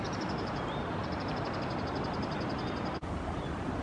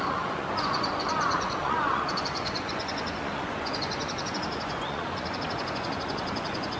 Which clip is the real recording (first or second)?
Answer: first